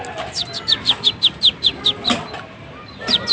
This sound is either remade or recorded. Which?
recorded